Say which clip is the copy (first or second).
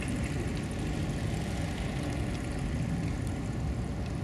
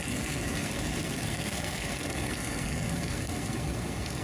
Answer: second